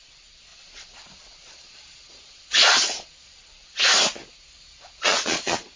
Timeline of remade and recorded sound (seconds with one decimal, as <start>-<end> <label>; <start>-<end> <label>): 0.0-3.8 remade; 3.8-4.8 recorded; 4.8-5.8 remade